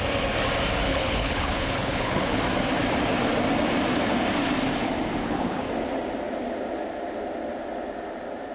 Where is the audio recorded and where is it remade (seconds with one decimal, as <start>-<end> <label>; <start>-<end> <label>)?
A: 0.0-0.9 recorded; 0.9-2.4 remade; 2.4-5.2 recorded; 5.2-5.7 remade; 5.7-8.5 recorded